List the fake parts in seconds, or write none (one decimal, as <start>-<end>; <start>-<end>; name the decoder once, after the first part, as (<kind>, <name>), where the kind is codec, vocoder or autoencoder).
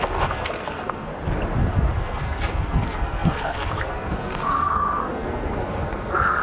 0.0-1.1 (codec, SNAC); 1.6-6.4